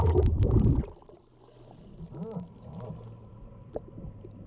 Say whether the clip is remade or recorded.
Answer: recorded